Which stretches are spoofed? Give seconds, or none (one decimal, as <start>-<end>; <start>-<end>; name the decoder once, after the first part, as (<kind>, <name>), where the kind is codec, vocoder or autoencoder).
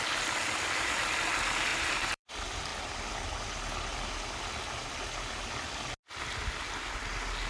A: 1.7-2.3 (vocoder, BigVGAN v2)